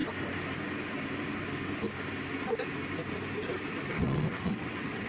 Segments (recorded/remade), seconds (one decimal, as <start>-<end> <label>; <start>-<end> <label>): 0.0-3.9 recorded; 3.9-5.1 remade